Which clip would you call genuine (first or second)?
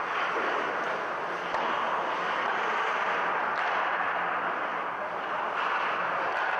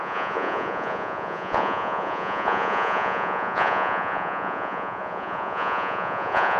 first